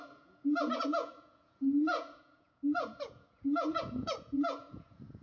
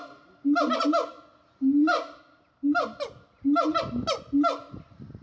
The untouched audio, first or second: second